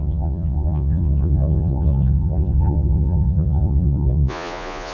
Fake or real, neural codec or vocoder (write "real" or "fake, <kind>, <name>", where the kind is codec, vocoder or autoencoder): fake, vocoder, Vocos